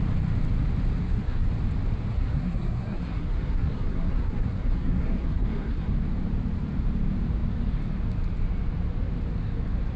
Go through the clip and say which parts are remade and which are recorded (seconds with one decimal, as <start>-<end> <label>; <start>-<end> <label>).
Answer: 0.0-1.0 recorded; 1.0-1.5 remade; 1.5-2.1 recorded; 2.1-6.0 remade; 6.0-10.0 recorded